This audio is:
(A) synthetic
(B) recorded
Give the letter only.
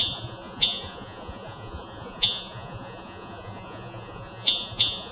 A